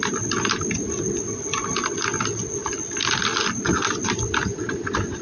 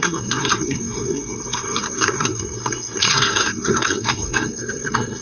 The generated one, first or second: second